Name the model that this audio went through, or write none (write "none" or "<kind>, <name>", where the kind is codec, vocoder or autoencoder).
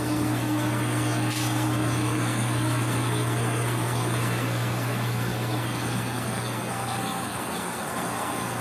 codec, SNAC